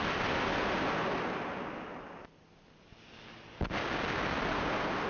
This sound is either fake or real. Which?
real